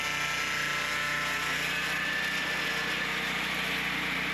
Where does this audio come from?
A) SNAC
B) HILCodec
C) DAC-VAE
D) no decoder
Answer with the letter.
D